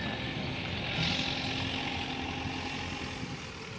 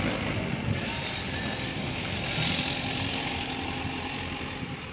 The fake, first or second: second